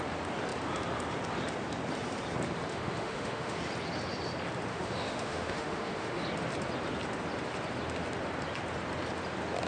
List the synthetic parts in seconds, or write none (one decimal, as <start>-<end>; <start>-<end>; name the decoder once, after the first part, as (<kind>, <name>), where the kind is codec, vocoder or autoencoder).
2.7-3.6 (autoencoder, DAC-VAE); 4.7-6.2